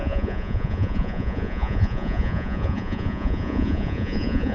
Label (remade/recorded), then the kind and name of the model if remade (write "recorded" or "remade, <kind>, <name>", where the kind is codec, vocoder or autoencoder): remade, vocoder, Vocos